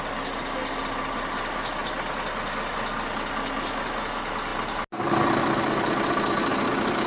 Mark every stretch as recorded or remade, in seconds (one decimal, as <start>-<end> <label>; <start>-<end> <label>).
0.0-7.1 recorded